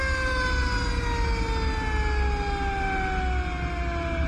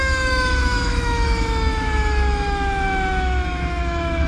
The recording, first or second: first